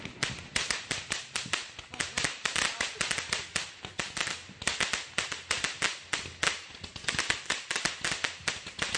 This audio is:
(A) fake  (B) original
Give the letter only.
B